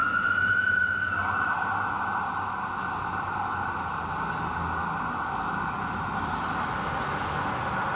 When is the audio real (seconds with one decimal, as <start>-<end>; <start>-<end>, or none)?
0.0-8.0

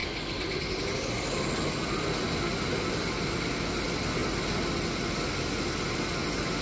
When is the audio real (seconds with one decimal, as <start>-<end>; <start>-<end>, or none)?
0.0-6.6

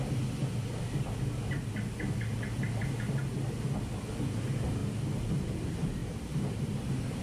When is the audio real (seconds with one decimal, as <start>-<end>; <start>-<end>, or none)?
0.0-7.2

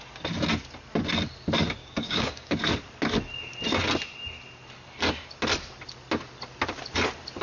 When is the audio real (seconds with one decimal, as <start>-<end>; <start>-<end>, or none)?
0.0-1.8; 2.6-7.4